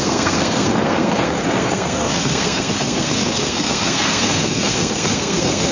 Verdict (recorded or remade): remade